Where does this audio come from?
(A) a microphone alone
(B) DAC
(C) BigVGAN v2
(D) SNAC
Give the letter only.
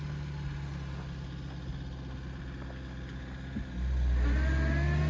A